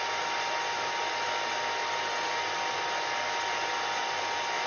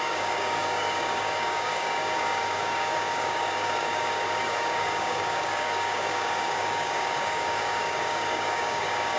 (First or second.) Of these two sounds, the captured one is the first